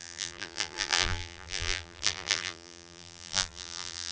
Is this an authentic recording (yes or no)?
no